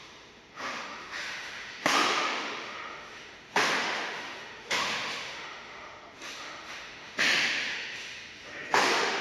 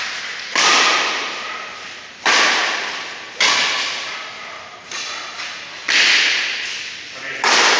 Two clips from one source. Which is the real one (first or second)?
second